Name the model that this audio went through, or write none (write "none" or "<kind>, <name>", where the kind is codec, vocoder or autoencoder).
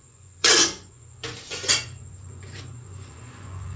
vocoder, Vocos